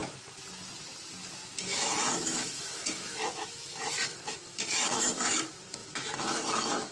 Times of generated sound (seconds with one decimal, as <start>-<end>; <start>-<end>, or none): 1.6-6.9